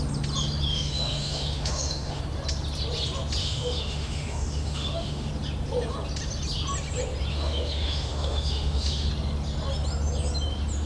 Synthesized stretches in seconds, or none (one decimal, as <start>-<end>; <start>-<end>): 0.7-2.2; 3.4-5.3; 7.3-9.1